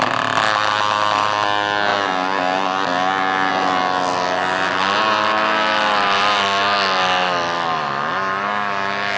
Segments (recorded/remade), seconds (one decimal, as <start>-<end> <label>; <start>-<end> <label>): 0.0-9.2 recorded